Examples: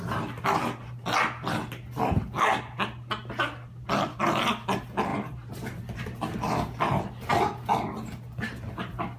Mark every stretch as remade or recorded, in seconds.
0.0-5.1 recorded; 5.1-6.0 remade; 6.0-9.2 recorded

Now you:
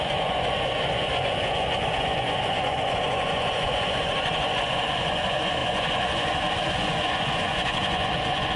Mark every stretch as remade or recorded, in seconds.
0.0-8.6 remade

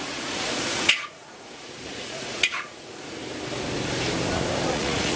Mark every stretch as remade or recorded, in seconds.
0.0-3.2 remade; 3.2-4.7 recorded; 4.7-5.2 remade

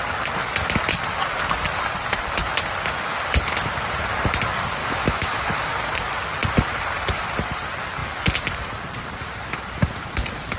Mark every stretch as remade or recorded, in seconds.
0.0-4.8 recorded; 4.8-5.4 remade; 5.4-10.6 recorded

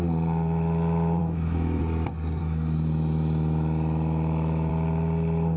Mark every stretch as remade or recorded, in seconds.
0.0-1.2 recorded; 1.2-1.8 remade; 1.8-2.4 recorded; 2.4-4.7 remade; 4.7-5.6 recorded

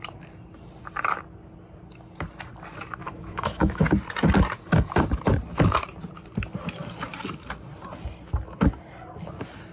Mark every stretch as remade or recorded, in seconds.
0.0-3.0 recorded; 3.0-3.8 remade; 3.8-9.7 recorded